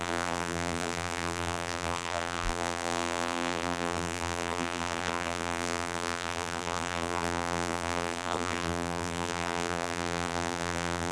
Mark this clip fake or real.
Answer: fake